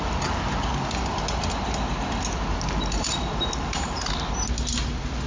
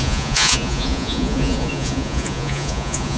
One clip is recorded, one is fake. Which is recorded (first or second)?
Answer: first